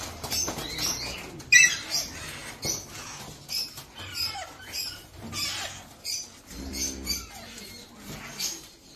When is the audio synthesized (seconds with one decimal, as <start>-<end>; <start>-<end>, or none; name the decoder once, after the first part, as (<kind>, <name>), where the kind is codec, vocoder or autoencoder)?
none